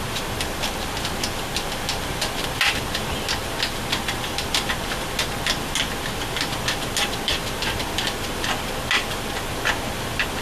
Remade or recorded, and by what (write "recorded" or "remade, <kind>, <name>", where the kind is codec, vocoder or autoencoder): recorded